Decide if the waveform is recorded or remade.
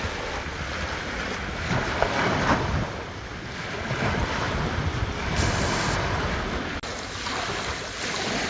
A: recorded